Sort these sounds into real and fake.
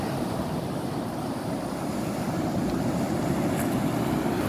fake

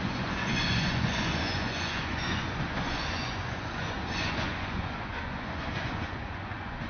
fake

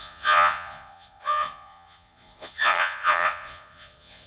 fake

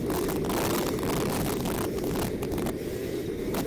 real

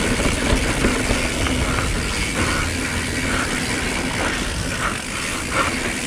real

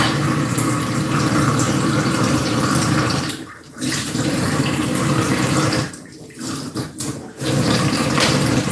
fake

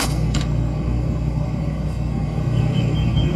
fake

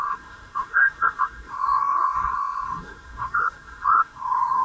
fake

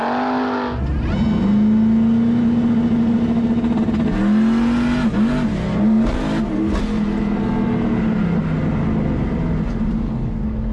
real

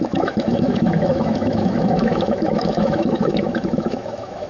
fake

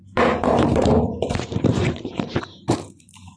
fake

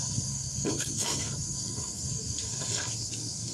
fake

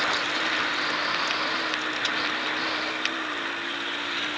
real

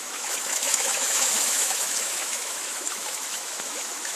fake